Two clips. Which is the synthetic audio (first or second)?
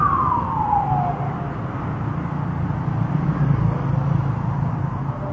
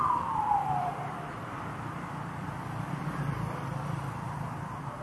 second